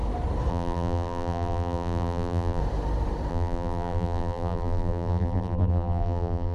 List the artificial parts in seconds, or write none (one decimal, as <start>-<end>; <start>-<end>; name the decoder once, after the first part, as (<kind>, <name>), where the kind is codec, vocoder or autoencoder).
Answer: 0.5-2.6 (vocoder, BigVGAN v2); 3.3-6.5